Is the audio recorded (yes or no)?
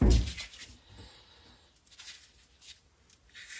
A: yes